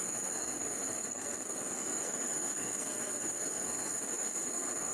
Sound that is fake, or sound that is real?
fake